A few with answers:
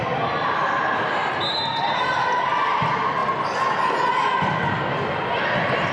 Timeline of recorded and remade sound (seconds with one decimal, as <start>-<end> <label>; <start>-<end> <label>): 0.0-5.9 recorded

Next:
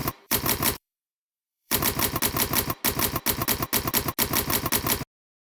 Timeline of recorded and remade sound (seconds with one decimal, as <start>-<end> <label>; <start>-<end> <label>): 0.0-1.8 remade; 1.8-5.5 recorded

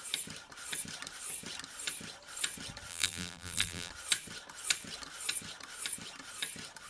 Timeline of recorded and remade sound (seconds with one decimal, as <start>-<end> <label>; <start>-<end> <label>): 0.0-2.9 recorded; 2.9-3.9 remade; 3.9-6.9 recorded

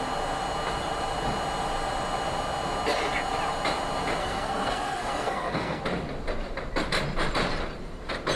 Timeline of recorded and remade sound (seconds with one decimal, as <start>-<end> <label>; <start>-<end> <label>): 0.0-4.2 recorded; 4.2-5.8 remade; 5.8-8.4 recorded